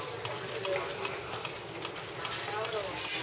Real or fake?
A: real